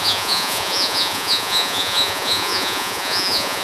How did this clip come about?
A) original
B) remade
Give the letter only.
B